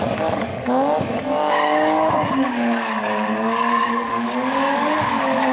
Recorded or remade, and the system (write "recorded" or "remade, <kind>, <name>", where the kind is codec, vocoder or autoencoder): remade, codec, DAC